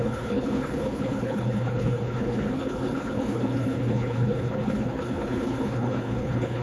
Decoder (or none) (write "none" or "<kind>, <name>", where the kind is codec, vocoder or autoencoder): codec, HILCodec